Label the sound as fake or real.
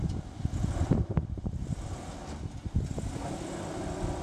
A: real